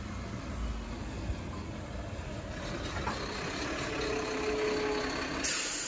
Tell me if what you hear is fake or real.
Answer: real